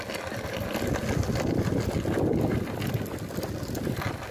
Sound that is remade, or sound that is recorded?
recorded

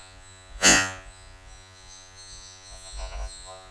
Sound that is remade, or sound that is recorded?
remade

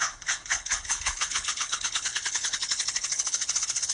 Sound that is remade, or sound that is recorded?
remade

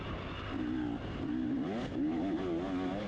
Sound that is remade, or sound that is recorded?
recorded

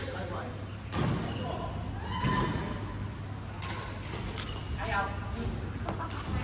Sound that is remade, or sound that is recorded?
recorded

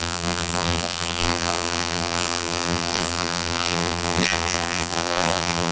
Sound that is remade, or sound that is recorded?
remade